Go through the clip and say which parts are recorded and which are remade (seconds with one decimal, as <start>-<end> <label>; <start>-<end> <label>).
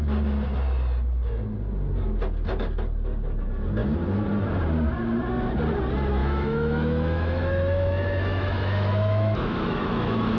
0.0-6.2 recorded; 6.2-10.4 remade